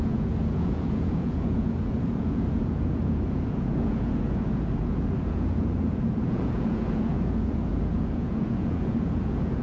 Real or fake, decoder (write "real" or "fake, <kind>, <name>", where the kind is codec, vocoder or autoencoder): fake, vocoder, Vocos